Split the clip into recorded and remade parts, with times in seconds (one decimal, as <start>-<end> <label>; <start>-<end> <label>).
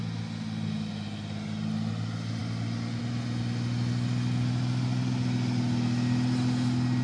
0.0-7.0 recorded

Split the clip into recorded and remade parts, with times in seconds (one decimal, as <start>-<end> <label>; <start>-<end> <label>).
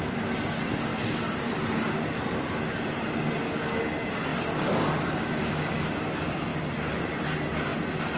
0.0-0.9 recorded; 0.9-3.0 remade; 3.0-6.5 recorded; 6.5-7.1 remade; 7.1-8.2 recorded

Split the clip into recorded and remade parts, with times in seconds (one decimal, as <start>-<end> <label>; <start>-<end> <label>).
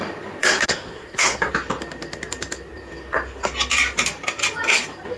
0.0-0.4 recorded; 0.4-1.5 remade; 1.5-5.2 recorded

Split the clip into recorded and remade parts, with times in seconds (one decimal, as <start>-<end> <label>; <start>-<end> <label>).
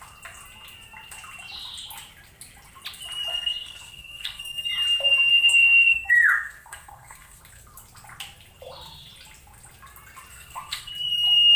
0.0-3.3 recorded; 3.3-4.7 remade; 4.7-5.3 recorded; 5.3-7.4 remade; 7.4-10.3 recorded; 10.3-10.9 remade; 10.9-11.6 recorded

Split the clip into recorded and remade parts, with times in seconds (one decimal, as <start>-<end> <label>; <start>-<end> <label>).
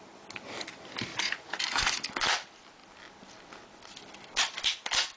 0.0-1.1 recorded; 1.1-2.0 remade; 2.0-5.2 recorded